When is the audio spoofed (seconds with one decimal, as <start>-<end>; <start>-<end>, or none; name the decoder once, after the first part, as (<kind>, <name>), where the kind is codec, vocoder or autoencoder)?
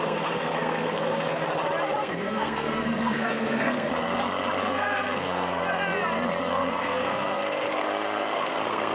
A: 0.0-1.4 (codec, SNAC); 2.0-3.9; 4.6-5.6; 6.5-8.9